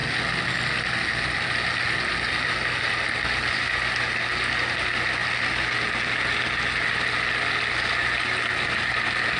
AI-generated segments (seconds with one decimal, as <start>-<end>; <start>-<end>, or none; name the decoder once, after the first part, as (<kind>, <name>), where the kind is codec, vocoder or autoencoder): none